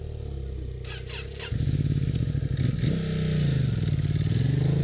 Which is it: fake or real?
real